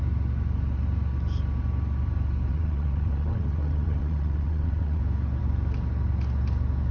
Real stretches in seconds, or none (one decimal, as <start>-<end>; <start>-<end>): 0.0-2.5; 5.0-6.9